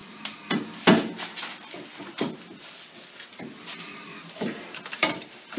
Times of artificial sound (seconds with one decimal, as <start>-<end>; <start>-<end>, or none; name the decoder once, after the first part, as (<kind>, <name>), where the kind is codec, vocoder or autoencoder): 5.0-5.6 (vocoder, BigVGAN v2)